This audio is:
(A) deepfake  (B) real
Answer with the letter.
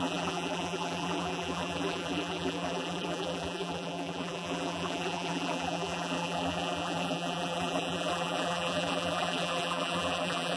A